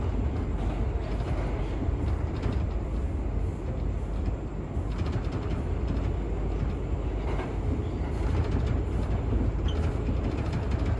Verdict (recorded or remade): recorded